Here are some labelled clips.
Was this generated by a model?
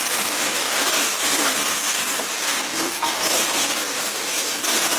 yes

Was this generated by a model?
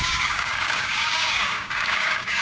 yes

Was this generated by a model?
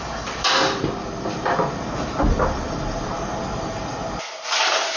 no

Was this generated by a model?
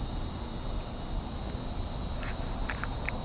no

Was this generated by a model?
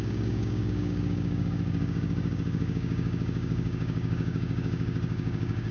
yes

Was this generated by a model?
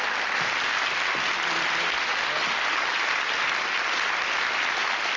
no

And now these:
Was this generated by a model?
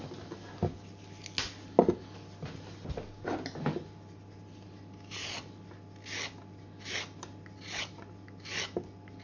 no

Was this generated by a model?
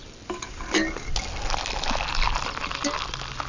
no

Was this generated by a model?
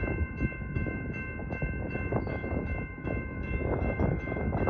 yes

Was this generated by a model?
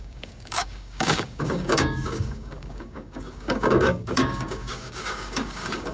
yes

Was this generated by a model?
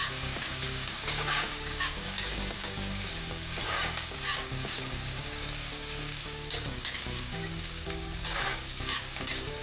yes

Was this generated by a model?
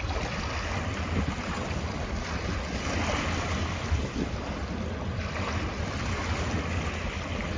no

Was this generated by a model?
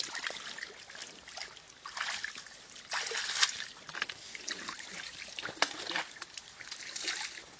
no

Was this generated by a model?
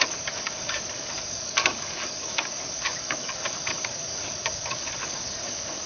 yes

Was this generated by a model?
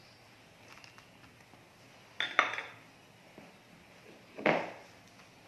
no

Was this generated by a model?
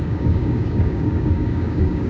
yes